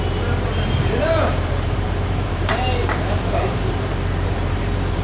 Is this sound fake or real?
fake